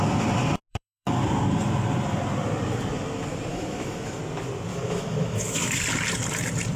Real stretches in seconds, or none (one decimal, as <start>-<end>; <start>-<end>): 0.0-0.7; 1.2-3.5; 4.2-4.7; 5.8-6.8